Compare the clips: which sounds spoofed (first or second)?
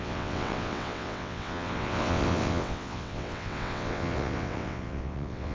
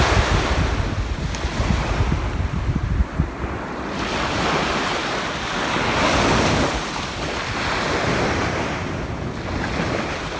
first